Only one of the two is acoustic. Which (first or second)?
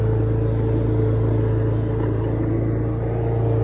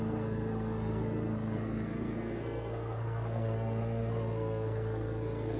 first